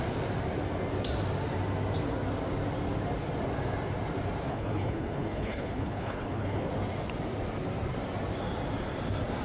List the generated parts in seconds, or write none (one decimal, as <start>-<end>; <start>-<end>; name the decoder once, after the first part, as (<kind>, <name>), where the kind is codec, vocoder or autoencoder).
4.5-6.7 (codec, HILCodec)